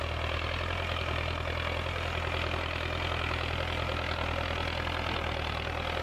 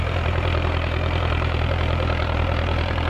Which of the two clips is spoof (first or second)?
second